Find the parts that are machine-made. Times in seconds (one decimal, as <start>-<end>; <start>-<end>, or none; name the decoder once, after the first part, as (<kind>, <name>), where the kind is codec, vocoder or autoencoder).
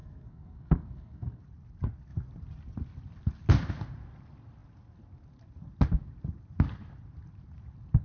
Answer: 0.0-1.4 (codec, SNAC)